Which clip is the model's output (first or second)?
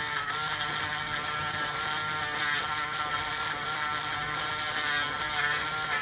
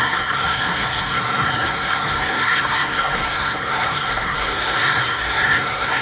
second